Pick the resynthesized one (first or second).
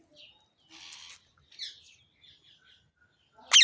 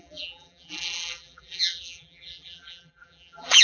second